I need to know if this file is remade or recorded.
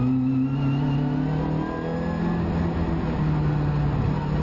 recorded